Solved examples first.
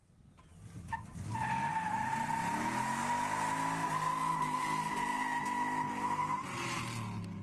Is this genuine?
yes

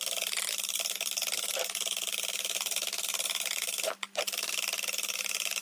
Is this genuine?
yes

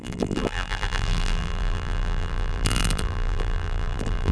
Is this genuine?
no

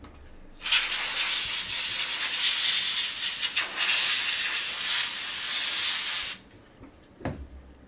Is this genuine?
yes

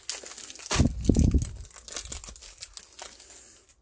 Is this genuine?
yes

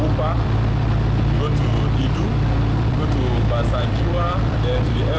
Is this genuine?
no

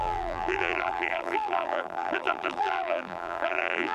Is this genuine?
no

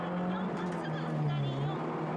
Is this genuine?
yes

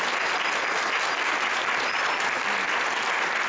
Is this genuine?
yes